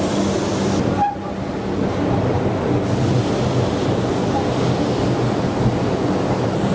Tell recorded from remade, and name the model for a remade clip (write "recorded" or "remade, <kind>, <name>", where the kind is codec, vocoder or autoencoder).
recorded